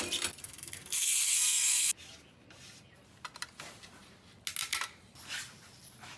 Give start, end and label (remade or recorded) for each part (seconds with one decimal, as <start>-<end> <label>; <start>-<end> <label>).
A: 0.0-0.4 recorded; 0.4-1.9 remade; 1.9-6.2 recorded